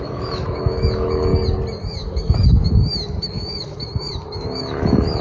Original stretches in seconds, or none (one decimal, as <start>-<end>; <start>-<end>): 1.3-1.8

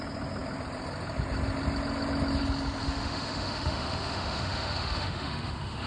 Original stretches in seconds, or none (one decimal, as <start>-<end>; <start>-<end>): 0.0-2.8

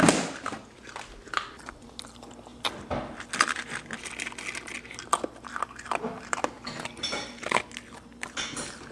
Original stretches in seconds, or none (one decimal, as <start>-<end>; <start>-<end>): 0.0-8.9

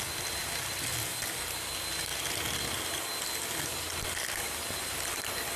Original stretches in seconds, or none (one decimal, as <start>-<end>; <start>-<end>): 0.0-5.6

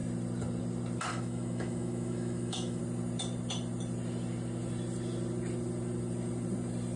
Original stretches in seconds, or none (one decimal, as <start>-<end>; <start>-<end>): 0.0-1.1; 2.8-7.0

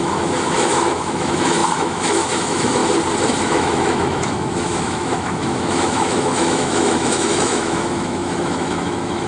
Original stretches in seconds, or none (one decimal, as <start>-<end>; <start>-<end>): 2.8-3.4